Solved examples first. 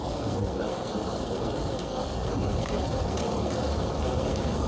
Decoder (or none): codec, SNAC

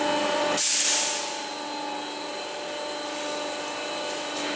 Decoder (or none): none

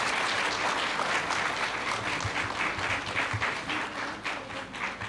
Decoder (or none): none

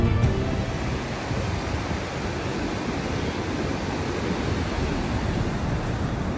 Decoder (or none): none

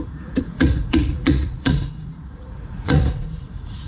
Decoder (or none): vocoder, Vocos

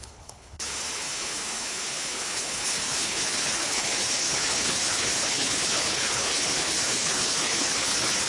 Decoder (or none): codec, HILCodec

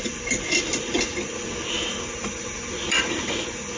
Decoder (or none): none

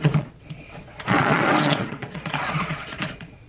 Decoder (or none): vocoder, Vocos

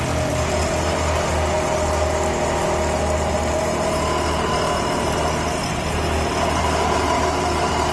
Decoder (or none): none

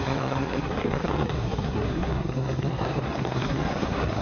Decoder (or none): codec, SNAC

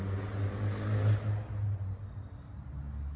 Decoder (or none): none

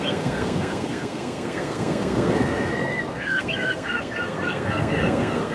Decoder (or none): codec, SNAC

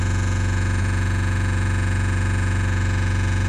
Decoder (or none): vocoder, Vocos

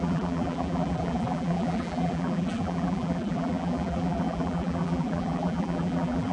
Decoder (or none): vocoder, BigVGAN v2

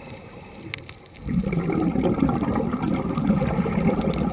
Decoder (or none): none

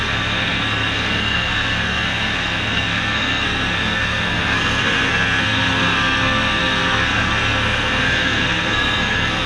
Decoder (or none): codec, SNAC